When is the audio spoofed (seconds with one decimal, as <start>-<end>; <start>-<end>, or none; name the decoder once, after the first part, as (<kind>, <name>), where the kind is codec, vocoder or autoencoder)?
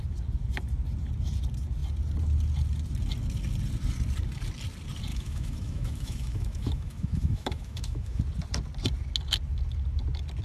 5.1-8.2 (autoencoder, DAC-VAE)